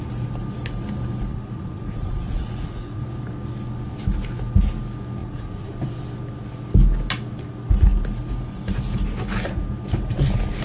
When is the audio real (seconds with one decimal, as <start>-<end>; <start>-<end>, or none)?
0.0-1.3; 3.0-5.2; 5.8-10.6